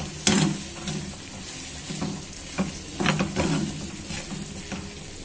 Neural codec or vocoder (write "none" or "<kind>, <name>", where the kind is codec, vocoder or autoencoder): none